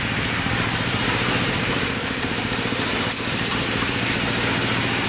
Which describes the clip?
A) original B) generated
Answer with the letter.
B